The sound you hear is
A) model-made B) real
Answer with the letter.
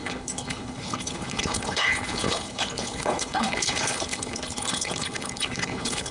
A